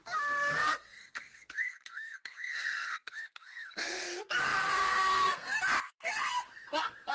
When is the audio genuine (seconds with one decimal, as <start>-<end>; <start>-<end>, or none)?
none